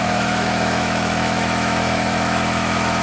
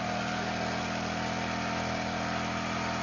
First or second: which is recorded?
second